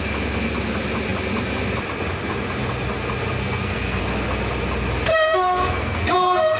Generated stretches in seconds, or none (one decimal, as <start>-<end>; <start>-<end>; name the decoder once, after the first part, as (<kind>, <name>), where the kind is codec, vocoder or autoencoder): 3.4-4.0 (codec, SNAC); 5.1-6.6